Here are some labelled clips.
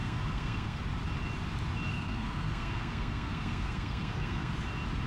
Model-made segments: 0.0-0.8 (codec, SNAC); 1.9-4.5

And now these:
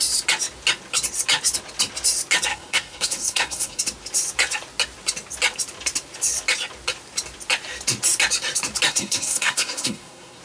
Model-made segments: 2.5-3.8 (codec, SNAC); 8.9-10.4

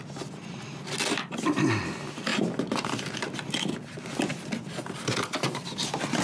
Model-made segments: none

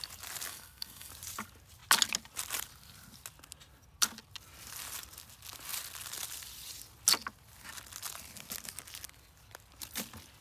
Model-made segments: 0.5-1.1 (codec, SNAC)

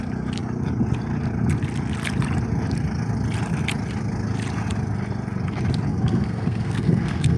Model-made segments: 5.9-7.4 (codec, SNAC)

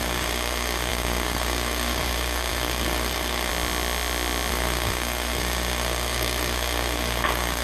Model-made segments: 0.0-3.5 (codec, SNAC); 4.5-7.6